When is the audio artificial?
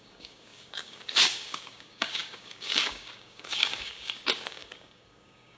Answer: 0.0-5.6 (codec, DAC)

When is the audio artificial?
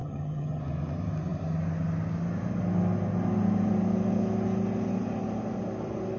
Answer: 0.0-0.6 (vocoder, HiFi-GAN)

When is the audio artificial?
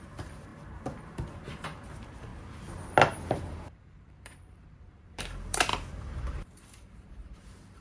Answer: 0.0-0.5 (vocoder, BigVGAN v2); 1.3-2.3; 3.3-7.8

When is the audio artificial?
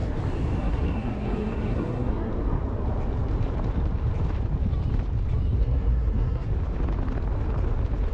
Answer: 0.6-2.3 (codec, SNAC); 5.6-6.5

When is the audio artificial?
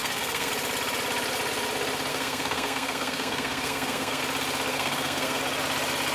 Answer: 0.0-0.5 (codec, SNAC); 2.1-4.2; 4.7-5.4